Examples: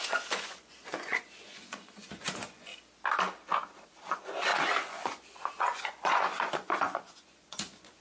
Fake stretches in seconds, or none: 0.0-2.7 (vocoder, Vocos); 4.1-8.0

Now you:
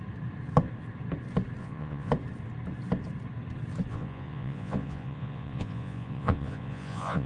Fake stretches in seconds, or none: 1.6-2.1 (vocoder, Vocos); 3.9-7.3

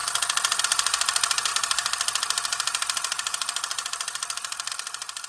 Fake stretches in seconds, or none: none

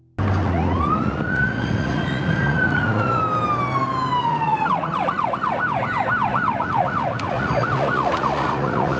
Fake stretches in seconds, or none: 0.4-3.2 (vocoder, Vocos); 4.2-5.6; 6.3-9.0

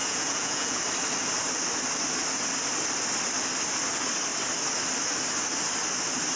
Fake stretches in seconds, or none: 0.0-0.8 (vocoder, Vocos)

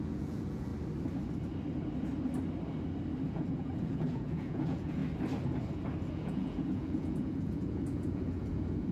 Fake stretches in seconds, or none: 0.0-0.7 (vocoder, Vocos); 3.3-5.0; 6.1-8.9

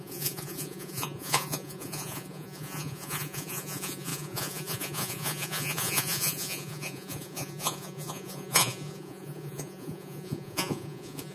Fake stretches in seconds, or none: 0.0-11.3 (vocoder, Vocos)